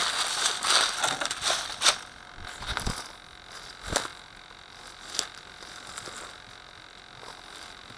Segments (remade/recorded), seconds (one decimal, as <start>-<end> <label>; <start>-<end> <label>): 0.0-8.0 recorded